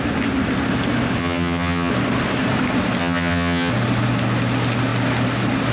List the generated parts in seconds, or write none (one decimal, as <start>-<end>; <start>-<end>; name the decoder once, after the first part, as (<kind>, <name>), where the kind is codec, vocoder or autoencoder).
1.2-1.9 (vocoder, HiFi-GAN); 3.0-3.7